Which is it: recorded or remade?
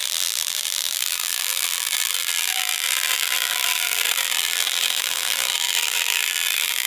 remade